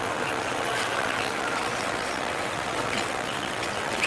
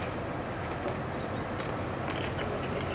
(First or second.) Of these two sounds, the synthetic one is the first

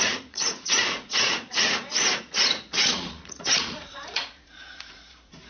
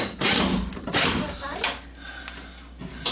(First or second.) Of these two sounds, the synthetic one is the first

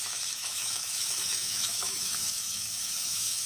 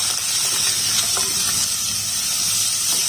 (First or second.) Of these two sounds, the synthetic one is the first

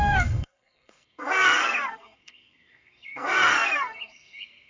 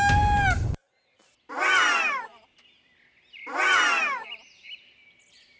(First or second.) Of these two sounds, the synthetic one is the first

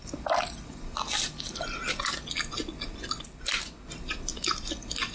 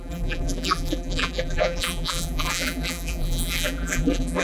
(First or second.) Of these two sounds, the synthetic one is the second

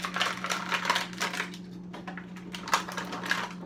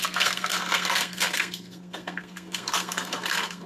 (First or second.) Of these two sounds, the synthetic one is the second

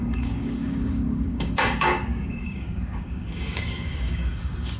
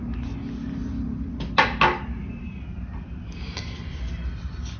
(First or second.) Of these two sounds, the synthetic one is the first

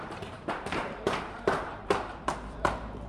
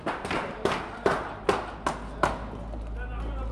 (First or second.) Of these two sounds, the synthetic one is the first